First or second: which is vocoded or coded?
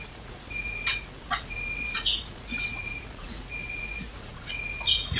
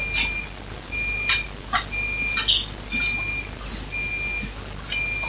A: first